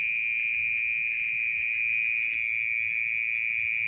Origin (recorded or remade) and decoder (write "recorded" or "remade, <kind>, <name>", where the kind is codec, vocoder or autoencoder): recorded